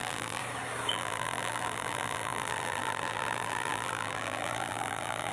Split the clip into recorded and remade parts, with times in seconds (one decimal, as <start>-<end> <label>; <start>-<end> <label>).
0.0-0.4 remade; 0.4-0.9 recorded; 0.9-5.3 remade